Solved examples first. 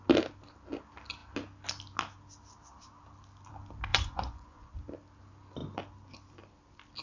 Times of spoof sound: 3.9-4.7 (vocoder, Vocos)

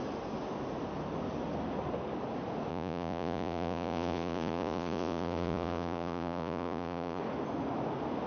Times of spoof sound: 2.7-7.2 (vocoder, Vocos)

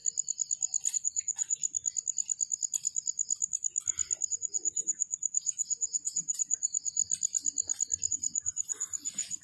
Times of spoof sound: 0.9-1.6 (vocoder, Vocos); 4.3-7.0; 8.1-9.4

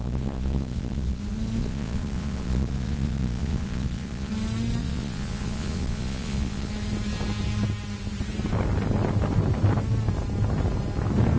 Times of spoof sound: 0.0-1.2 (vocoder, Vocos); 1.6-4.3; 4.8-6.7

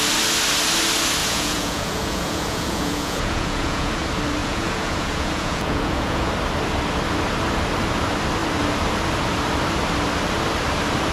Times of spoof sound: 1.2-3.9 (vocoder, Vocos); 4.4-6.3

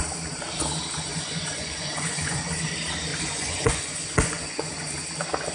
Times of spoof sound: 1.1-2.4 (vocoder, Vocos); 3.1-4.9

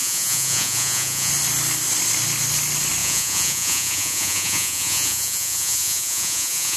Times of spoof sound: 0.0-1.3 (vocoder, Vocos); 3.0-6.8